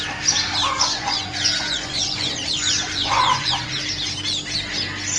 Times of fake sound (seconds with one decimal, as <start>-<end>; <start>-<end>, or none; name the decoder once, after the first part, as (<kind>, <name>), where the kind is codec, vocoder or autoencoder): 0.6-3.7 (vocoder, Vocos)